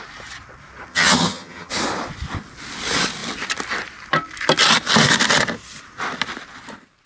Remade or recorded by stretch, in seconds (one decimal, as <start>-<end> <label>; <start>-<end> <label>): 0.0-0.9 recorded; 0.9-1.7 remade; 1.7-7.1 recorded